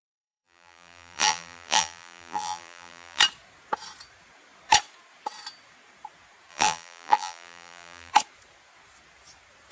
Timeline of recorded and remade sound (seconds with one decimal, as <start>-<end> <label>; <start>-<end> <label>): 0.0-3.2 remade; 3.2-6.5 recorded; 6.5-8.1 remade; 8.1-9.7 recorded

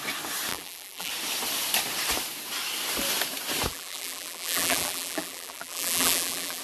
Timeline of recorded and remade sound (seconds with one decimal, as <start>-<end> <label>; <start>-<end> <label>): 0.0-0.5 recorded; 0.5-1.1 remade; 1.1-3.7 recorded; 3.7-6.6 remade

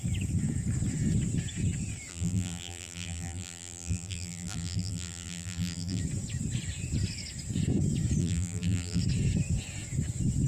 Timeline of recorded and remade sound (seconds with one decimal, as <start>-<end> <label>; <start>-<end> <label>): 0.0-2.1 recorded; 2.1-6.0 remade; 6.0-8.2 recorded; 8.2-9.0 remade; 9.0-10.5 recorded

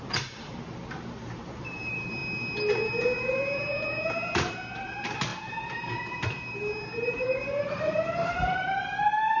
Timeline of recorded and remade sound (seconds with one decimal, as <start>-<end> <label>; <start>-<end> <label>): 0.0-9.4 remade

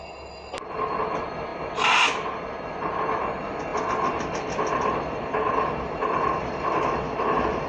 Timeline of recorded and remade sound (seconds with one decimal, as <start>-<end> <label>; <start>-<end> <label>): 0.0-7.7 recorded

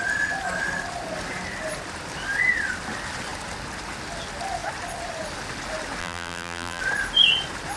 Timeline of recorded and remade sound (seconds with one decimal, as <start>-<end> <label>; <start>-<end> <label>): 0.0-6.0 recorded; 6.0-6.8 remade; 6.8-7.8 recorded